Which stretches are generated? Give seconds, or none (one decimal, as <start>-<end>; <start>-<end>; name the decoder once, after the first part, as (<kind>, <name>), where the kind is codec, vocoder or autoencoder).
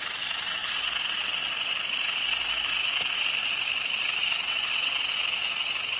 none